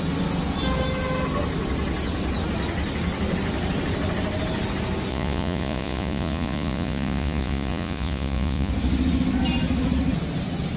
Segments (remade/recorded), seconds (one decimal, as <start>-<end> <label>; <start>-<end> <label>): 0.0-5.1 recorded; 5.1-8.7 remade; 8.7-10.8 recorded